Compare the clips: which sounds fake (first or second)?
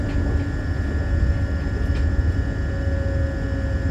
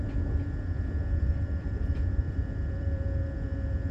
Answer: second